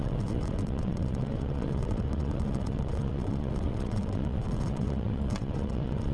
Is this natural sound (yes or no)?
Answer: no